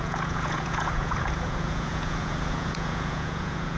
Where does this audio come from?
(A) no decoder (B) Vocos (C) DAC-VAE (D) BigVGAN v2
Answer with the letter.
B